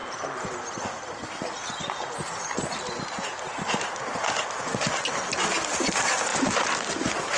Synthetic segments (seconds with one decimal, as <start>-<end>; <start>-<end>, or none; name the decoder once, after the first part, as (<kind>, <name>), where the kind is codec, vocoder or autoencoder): none